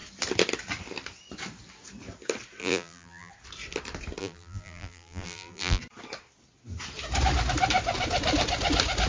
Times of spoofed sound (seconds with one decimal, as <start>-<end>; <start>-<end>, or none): 2.6-3.3; 4.2-5.8